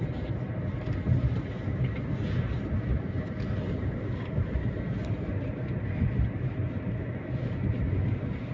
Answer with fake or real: real